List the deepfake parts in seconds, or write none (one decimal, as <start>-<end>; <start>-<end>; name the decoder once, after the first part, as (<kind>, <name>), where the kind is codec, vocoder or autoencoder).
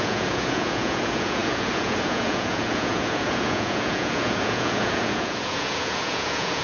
0.0-6.6 (vocoder, Vocos)